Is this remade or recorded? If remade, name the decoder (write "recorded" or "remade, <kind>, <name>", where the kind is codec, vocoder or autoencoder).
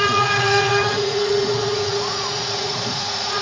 remade, vocoder, Vocos